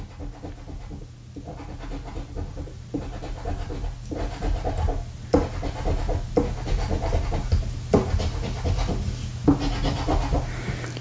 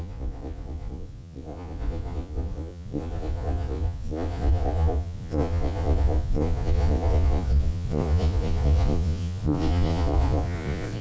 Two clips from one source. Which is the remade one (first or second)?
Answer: second